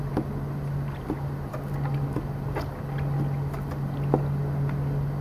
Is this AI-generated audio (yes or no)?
no